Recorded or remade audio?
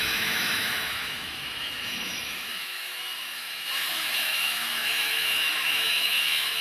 remade